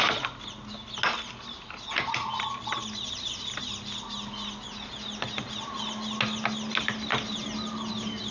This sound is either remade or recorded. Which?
recorded